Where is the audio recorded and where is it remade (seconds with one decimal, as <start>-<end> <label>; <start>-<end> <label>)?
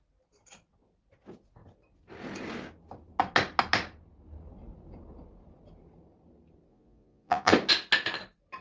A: 0.0-6.7 recorded; 6.7-7.5 remade; 7.5-8.6 recorded